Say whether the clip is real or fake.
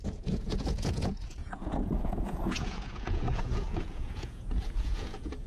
fake